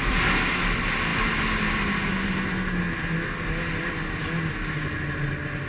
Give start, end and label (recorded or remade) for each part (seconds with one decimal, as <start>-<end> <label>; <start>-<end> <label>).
0.0-5.7 recorded